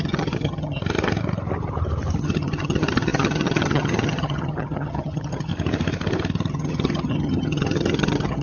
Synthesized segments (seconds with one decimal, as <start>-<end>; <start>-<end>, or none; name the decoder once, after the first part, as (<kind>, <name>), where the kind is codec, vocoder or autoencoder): 0.0-0.8 (vocoder, HiFi-GAN); 2.2-5.5; 6.5-8.4